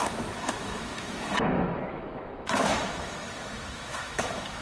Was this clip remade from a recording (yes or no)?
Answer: yes